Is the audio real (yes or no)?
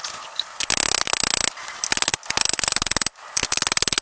yes